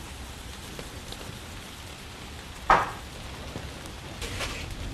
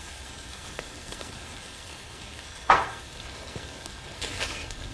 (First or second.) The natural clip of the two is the first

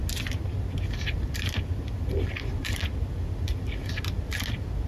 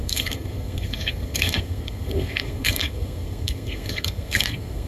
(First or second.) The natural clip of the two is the first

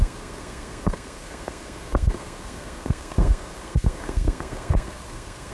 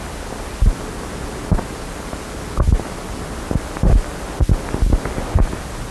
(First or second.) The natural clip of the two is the second